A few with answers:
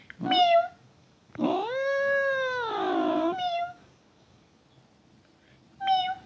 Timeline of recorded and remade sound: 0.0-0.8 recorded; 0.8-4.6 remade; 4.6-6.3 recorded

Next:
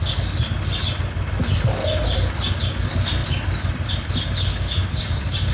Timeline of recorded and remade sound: 0.0-4.5 recorded; 4.5-5.5 remade